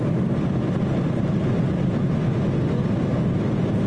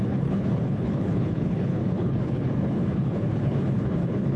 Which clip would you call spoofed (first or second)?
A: second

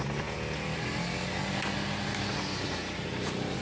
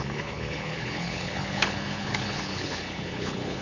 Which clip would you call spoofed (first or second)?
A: second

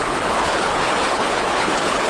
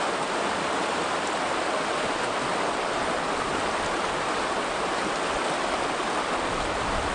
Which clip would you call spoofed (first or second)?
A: first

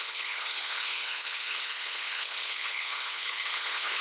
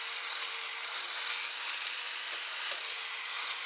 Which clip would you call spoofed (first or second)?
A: first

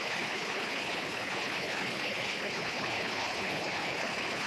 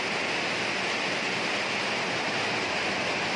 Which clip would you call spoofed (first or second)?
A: first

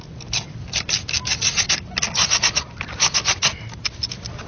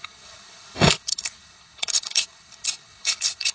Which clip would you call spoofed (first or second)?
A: second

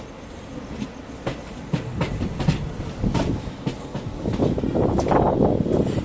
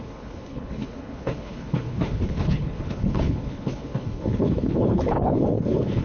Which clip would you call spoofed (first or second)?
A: second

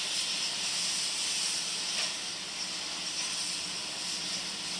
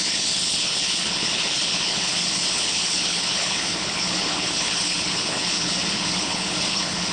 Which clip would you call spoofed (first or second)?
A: second